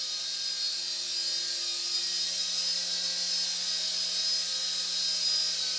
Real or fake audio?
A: real